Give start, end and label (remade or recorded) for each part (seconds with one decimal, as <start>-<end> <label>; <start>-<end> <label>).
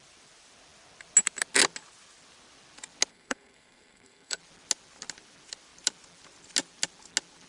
0.0-3.1 recorded; 3.1-4.4 remade; 4.4-7.5 recorded